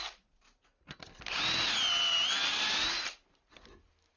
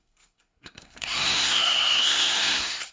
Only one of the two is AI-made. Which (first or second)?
second